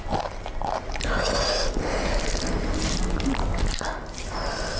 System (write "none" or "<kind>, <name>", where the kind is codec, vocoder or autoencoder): none